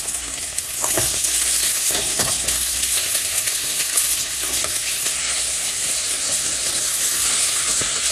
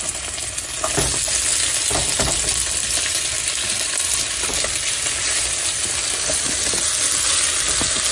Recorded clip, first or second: second